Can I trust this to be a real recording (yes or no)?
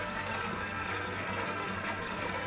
no